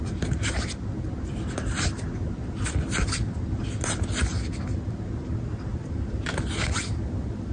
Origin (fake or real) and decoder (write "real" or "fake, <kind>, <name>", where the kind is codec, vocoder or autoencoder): real